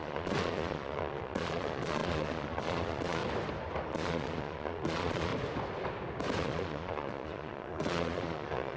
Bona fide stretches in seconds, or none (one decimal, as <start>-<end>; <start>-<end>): 3.2-3.9; 5.3-6.4